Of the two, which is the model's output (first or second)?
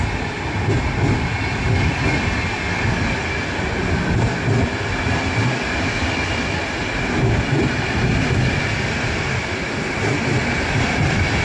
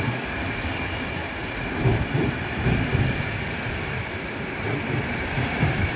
second